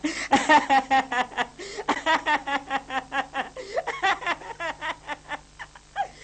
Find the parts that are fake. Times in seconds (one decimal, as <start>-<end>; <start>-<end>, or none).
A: none